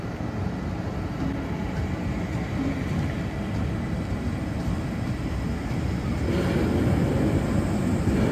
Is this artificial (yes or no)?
no